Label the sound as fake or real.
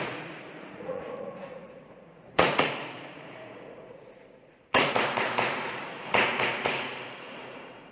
fake